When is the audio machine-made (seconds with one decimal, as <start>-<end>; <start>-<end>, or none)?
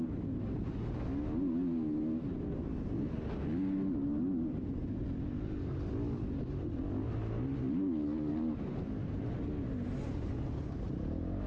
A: none